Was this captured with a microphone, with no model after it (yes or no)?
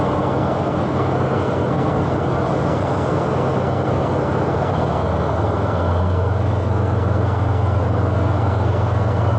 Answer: no